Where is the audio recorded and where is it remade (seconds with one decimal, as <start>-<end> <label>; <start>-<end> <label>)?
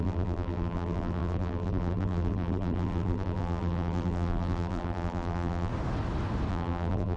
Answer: 0.0-5.7 remade; 5.7-6.5 recorded; 6.5-7.2 remade